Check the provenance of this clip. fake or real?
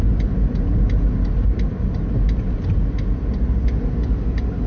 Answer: real